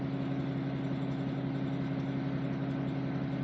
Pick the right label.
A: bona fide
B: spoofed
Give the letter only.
A